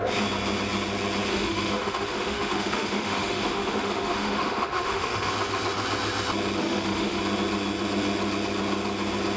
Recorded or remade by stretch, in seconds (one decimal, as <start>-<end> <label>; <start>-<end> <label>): 0.0-1.3 recorded; 1.3-5.3 remade; 5.3-6.6 recorded; 6.6-7.2 remade; 7.2-9.4 recorded